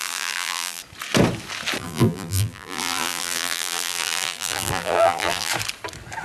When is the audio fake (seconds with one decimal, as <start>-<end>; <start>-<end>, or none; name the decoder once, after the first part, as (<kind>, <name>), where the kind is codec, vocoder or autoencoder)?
0.0-0.8 (vocoder, BigVGAN v2); 1.8-5.5